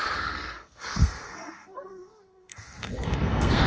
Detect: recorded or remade remade